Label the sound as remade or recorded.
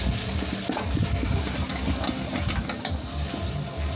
recorded